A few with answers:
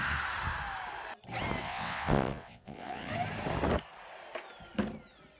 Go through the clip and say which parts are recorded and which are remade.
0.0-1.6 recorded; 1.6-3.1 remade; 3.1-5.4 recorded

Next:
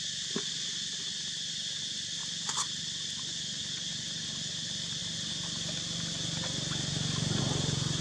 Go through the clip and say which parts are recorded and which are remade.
0.0-8.0 recorded

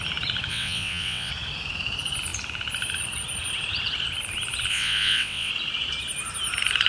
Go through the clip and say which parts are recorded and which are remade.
0.0-0.5 recorded; 0.5-1.3 remade; 1.3-4.7 recorded; 4.7-5.5 remade; 5.5-6.9 recorded

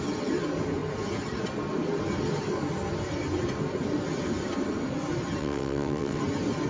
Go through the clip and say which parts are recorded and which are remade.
0.0-5.4 recorded; 5.4-6.2 remade; 6.2-6.7 recorded

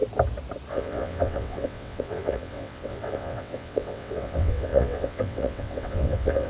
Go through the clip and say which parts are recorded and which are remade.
0.0-0.7 recorded; 0.7-6.5 remade

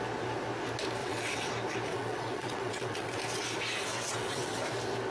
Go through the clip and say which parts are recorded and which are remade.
0.0-1.0 recorded; 1.0-1.5 remade; 1.5-1.9 recorded; 1.9-3.2 remade; 3.2-3.9 recorded; 3.9-4.6 remade; 4.6-5.1 recorded

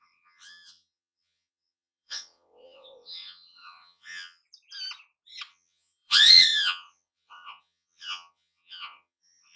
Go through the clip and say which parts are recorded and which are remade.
0.0-4.4 remade; 4.4-5.5 recorded; 5.5-9.6 remade